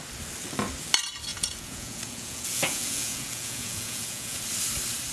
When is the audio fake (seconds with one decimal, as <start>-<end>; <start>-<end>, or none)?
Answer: 1.3-4.4